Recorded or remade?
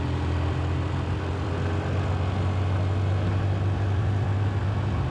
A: recorded